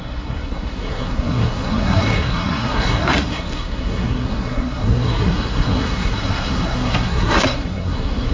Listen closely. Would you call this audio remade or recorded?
remade